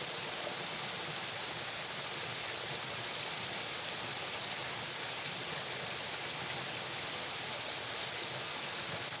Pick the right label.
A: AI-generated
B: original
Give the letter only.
B